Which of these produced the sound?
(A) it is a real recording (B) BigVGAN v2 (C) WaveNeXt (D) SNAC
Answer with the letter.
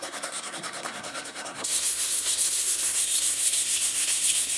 D